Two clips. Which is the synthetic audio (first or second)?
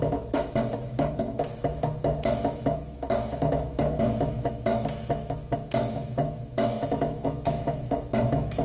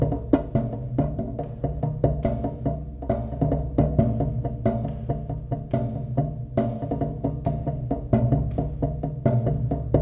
first